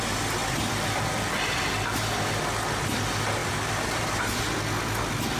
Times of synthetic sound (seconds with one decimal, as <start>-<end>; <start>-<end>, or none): 0.4-2.0; 3.4-4.4

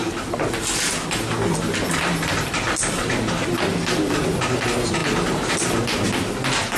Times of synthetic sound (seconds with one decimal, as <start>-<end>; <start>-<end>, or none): 0.0-4.0